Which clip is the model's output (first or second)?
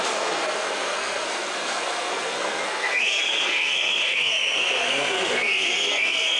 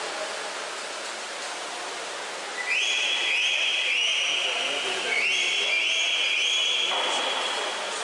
first